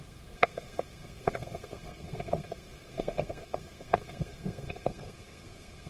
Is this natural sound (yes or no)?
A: no